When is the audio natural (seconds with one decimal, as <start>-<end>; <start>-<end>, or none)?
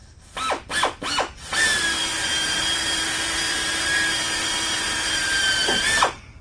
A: 0.0-2.0; 5.8-6.4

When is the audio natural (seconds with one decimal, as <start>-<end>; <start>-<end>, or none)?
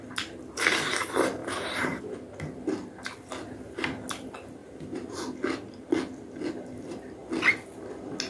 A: 0.0-1.4; 2.0-4.6; 5.2-8.3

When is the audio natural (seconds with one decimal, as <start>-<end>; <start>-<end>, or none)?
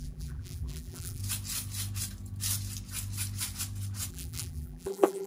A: 1.2-4.1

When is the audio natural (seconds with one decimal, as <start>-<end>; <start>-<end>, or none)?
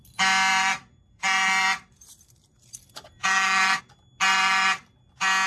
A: 0.0-0.5; 3.8-4.3; 5.1-5.5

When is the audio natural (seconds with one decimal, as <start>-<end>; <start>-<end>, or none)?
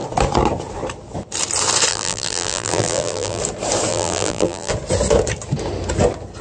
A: 0.0-1.9; 3.4-3.9; 4.7-6.4